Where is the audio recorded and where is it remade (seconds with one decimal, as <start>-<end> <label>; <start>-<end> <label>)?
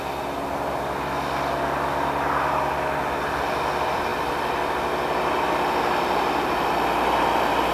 0.0-4.1 recorded; 4.1-6.7 remade; 6.7-7.7 recorded